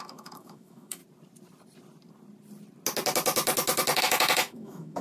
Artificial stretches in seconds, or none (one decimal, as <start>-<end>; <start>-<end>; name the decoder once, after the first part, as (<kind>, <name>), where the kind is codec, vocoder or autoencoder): 0.0-1.0 (autoencoder, DAC-VAE); 4.0-5.0